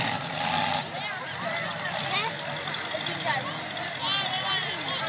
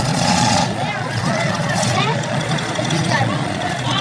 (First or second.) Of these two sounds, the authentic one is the first